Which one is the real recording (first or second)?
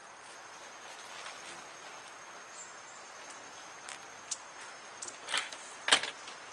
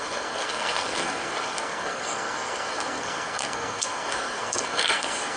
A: first